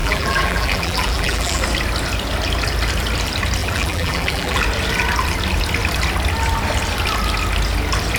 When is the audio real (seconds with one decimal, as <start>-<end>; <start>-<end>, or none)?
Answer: 1.6-3.6; 4.6-8.2

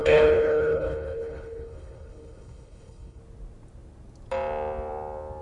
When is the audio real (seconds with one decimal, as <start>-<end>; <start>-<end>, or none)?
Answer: 3.2-5.4

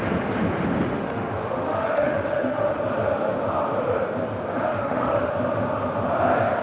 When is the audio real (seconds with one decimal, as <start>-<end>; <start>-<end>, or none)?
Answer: 0.0-0.9; 2.8-4.7; 5.3-6.6

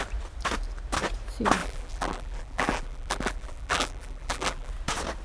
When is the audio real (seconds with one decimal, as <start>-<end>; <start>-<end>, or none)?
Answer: 0.0-1.6; 4.7-5.2

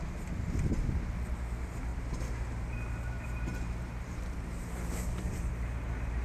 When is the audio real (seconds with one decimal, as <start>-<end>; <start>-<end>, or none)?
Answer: 0.0-1.9; 5.5-6.2

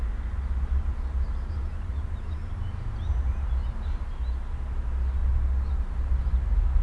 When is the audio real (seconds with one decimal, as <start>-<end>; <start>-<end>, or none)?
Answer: 0.0-0.9; 4.1-6.8

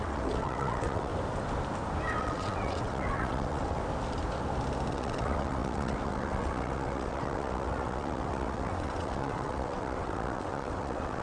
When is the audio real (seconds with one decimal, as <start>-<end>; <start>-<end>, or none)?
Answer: 1.1-2.2; 3.8-4.9